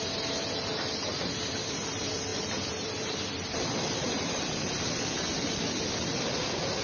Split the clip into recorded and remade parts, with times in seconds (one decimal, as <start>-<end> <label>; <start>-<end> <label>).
0.0-6.8 recorded